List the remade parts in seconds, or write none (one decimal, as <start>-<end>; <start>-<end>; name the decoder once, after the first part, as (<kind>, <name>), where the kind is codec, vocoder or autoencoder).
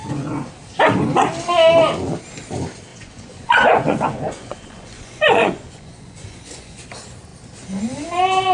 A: 0.0-0.5 (vocoder, Vocos); 2.9-6.8